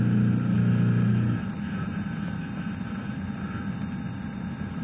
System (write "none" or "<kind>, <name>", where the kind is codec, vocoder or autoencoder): none